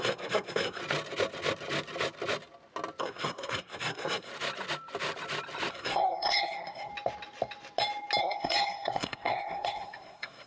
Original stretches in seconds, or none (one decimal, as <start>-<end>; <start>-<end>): 0.8-3.0; 4.3-5.7; 6.9-8.2